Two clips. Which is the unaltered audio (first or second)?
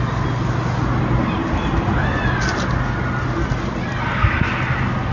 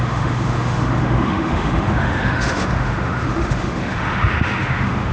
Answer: first